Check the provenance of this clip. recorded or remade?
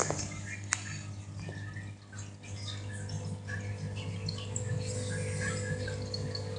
recorded